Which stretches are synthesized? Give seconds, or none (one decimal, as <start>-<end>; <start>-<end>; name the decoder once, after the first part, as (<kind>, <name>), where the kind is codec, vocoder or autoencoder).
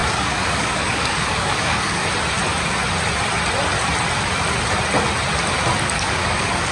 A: 0.0-2.0 (codec, DAC); 5.8-6.7